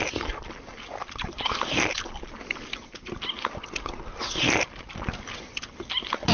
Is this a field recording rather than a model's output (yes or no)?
yes